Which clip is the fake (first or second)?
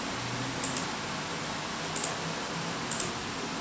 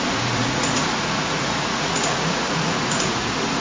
second